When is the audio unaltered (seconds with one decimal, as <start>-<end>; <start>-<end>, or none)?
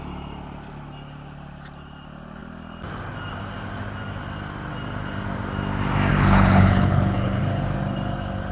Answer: 0.0-6.1; 7.4-8.5